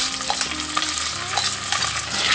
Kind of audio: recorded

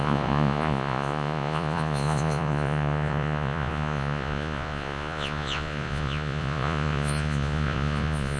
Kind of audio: remade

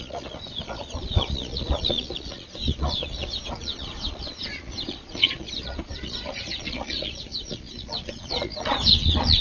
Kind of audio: remade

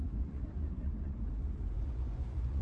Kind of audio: remade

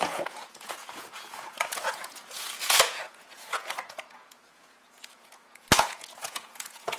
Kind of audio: remade